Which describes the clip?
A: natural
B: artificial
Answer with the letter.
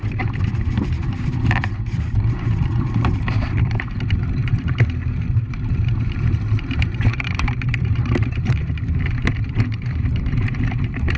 B